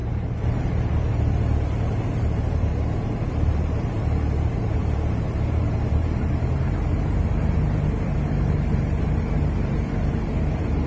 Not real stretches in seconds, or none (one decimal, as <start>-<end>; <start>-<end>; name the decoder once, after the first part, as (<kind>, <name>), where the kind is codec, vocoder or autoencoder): 0.0-2.7 (vocoder, BigVGAN v2); 3.3-10.9